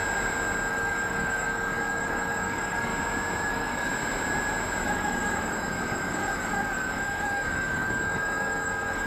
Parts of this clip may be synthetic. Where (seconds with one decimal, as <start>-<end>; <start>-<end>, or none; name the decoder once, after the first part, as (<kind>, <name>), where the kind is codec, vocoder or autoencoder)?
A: 0.7-2.9 (codec, DAC); 3.5-3.9; 4.8-9.1